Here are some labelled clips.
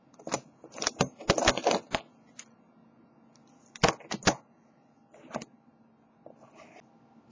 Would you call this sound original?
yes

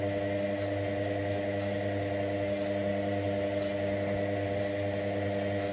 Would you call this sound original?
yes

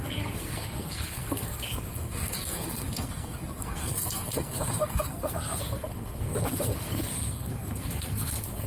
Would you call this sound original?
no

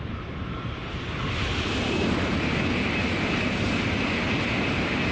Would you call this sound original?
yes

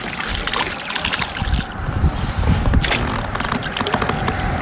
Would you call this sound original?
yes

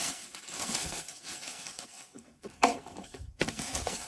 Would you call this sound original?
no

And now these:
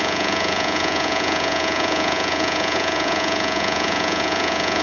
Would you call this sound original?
no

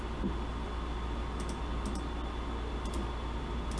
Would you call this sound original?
yes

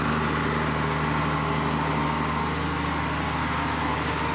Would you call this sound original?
yes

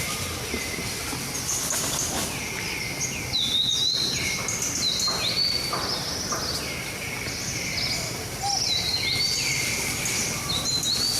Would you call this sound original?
yes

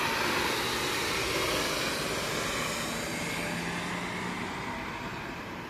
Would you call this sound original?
yes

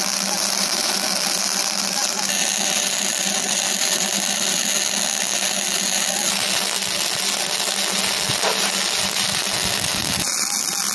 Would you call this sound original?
yes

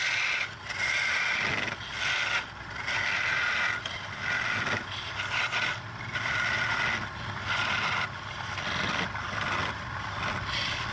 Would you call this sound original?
yes